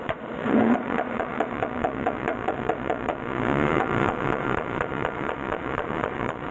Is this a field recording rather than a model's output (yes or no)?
no